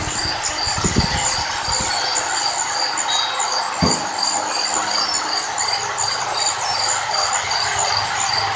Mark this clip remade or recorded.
recorded